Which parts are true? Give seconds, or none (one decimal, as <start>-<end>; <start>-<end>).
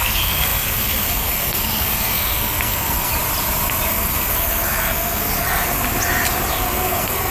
3.1-3.9; 5.8-6.5